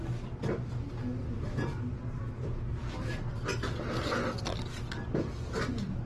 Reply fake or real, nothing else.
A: real